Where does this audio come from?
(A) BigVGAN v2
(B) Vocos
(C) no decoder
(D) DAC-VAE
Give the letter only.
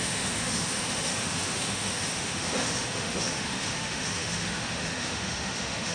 D